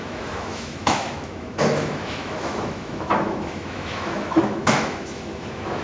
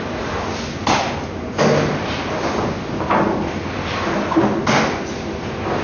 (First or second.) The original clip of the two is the second